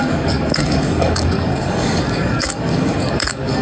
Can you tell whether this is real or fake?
fake